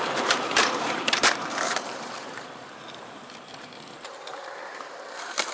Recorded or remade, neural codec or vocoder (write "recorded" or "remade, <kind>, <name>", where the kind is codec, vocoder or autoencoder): remade, vocoder, BigVGAN v2